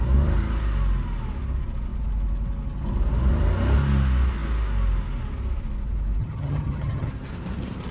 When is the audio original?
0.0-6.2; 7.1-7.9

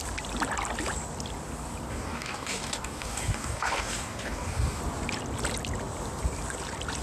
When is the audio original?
0.0-1.9; 4.8-7.0

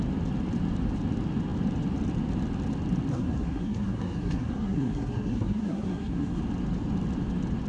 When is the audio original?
0.0-3.1; 6.4-7.7

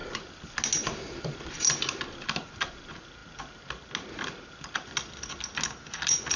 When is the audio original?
0.0-6.4